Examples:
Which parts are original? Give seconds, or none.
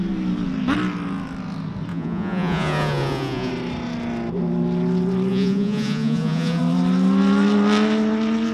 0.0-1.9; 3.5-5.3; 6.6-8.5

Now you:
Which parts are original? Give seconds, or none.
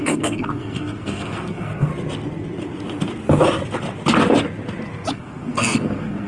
1.9-5.1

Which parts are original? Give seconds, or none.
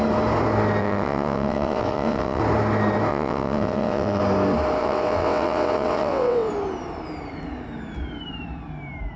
0.0-0.8; 2.4-3.1; 4.2-4.8; 6.5-9.2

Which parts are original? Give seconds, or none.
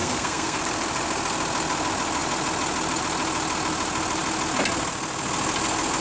0.6-6.0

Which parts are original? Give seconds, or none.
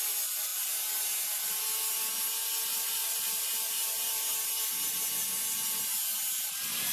0.0-3.0; 4.3-6.9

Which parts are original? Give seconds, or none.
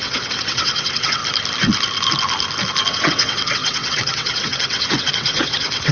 1.2-2.9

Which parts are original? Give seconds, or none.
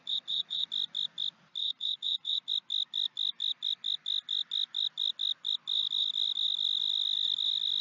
0.7-1.6; 2.5-7.8